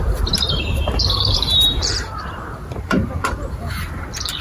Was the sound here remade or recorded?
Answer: remade